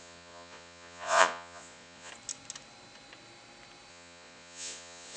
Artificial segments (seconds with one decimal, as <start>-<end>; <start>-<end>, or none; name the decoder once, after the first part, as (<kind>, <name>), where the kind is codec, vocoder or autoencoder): 0.0-2.1 (vocoder, Vocos); 3.9-5.2